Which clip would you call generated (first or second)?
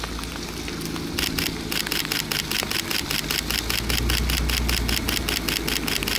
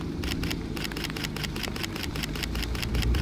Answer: second